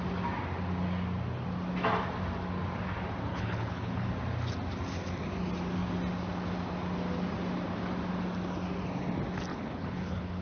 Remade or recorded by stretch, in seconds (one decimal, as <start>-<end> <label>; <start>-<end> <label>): 0.0-3.3 recorded; 3.3-4.1 remade; 4.1-9.5 recorded; 9.5-10.4 remade